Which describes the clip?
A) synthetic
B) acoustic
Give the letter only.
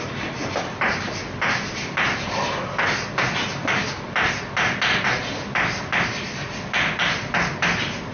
B